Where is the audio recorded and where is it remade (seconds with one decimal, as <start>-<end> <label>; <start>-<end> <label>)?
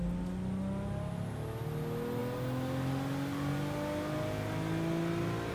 0.0-5.5 recorded